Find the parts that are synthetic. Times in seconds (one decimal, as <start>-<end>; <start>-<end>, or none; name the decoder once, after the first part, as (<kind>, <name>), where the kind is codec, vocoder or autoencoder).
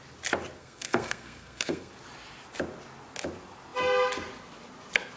0.6-1.9 (codec, SNAC)